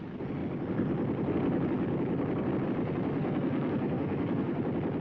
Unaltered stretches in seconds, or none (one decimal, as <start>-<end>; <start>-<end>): 0.0-3.2; 4.6-5.0

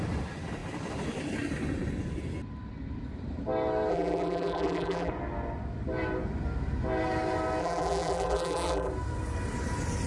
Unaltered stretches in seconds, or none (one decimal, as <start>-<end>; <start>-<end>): 0.0-3.9; 5.1-7.6; 8.9-10.1

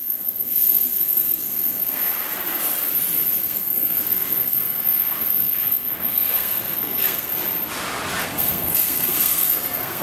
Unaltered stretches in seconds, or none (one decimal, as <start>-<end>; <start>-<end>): 2.0-3.4; 7.3-8.2

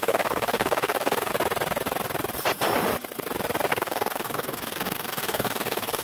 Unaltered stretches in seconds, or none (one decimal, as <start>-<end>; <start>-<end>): 1.3-3.7

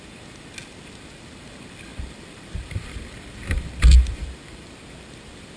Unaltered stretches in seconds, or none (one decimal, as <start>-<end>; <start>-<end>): 0.0-1.9

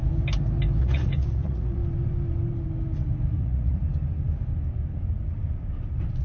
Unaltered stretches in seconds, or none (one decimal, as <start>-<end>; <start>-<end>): 0.0-0.8; 1.8-3.3; 3.8-6.2

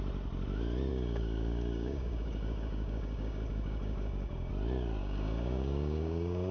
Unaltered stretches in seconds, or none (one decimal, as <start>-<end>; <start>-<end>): 0.0-0.9; 4.5-5.0